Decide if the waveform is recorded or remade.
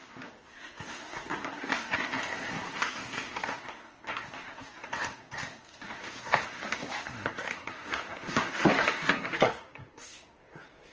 remade